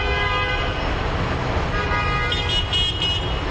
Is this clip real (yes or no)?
yes